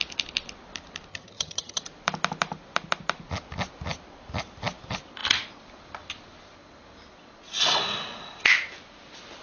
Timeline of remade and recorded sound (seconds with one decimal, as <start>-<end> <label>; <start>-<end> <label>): 0.0-1.1 recorded; 1.1-1.8 remade; 1.8-9.4 recorded

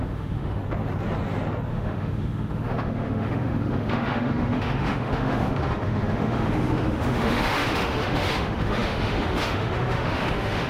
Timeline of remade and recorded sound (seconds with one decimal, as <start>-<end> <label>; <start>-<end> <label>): 0.0-0.6 remade; 0.6-1.7 recorded; 1.7-10.7 remade